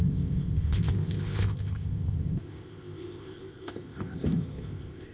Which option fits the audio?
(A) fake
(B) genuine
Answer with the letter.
A